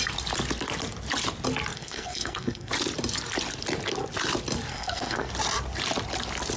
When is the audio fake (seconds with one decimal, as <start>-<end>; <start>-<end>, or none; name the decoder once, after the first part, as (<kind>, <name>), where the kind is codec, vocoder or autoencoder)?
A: 1.7-2.7 (codec, SNAC); 4.7-5.3